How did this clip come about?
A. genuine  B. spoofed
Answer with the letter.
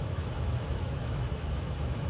B